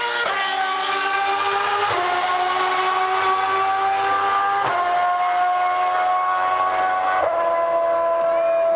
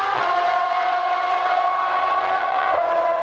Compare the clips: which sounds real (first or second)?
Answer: first